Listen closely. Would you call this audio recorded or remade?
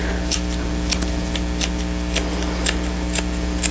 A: recorded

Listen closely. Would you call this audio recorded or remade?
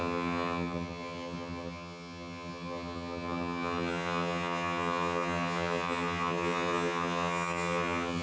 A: remade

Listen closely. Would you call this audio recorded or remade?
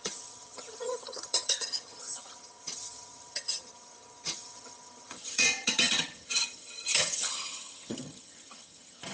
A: remade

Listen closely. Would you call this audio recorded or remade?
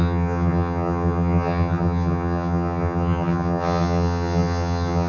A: remade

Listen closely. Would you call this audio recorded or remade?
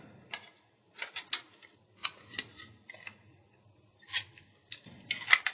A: recorded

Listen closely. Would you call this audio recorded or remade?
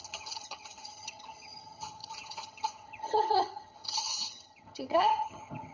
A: remade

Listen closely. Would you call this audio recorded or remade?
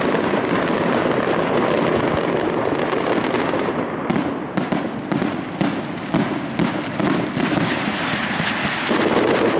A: recorded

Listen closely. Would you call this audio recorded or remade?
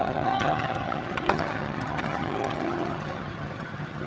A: remade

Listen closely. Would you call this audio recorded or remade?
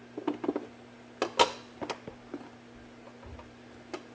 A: recorded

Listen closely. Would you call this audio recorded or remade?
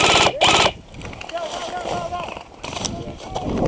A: recorded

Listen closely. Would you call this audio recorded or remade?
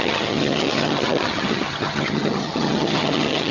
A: remade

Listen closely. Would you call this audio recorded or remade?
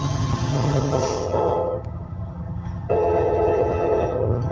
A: remade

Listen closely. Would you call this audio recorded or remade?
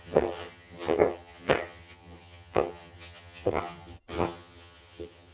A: remade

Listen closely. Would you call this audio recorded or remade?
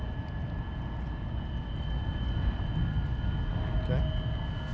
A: recorded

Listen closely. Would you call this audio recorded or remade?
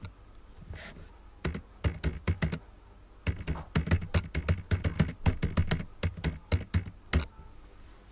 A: recorded